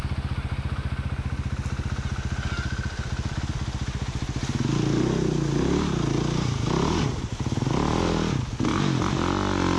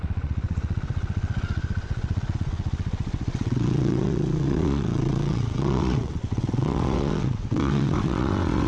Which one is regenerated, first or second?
second